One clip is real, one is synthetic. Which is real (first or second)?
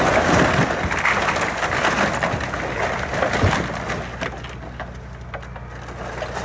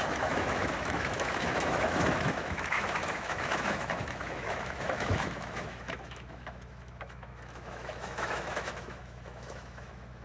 first